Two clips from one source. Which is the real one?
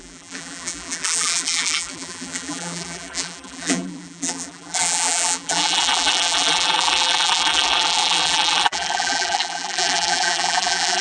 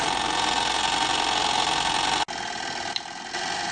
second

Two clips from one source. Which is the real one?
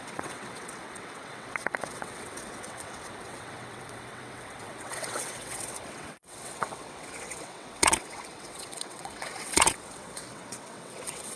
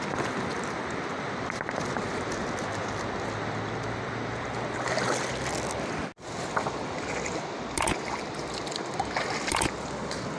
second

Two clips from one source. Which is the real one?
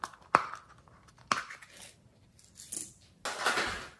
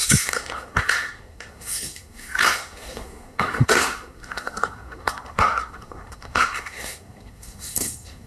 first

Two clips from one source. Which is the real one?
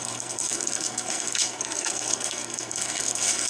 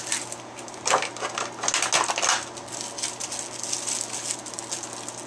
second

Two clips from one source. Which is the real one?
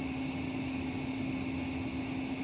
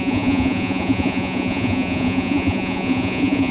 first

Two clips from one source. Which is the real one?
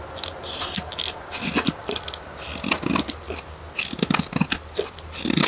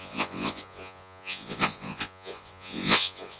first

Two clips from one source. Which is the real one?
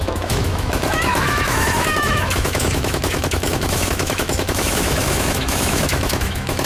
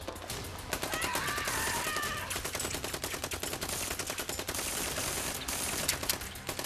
second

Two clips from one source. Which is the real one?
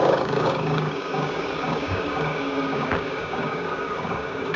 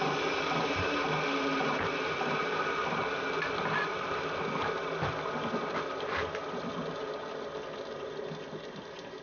second